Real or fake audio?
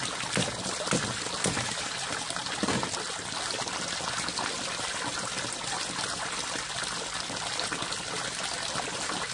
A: real